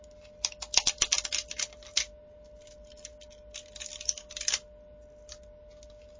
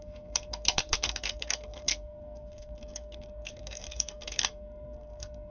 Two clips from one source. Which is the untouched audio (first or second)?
first